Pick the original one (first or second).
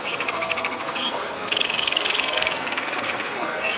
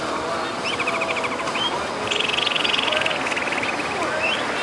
second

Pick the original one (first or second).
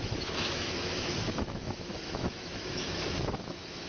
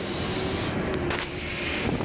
second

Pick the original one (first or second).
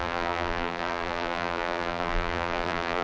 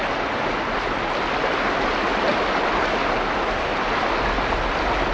second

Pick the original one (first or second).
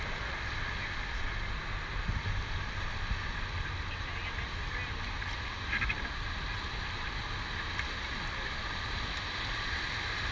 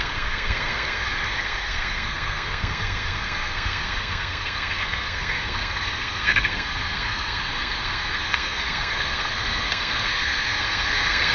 first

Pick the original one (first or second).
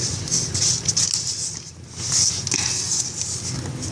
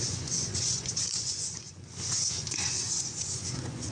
first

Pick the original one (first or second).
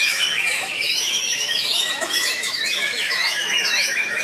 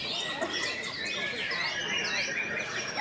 second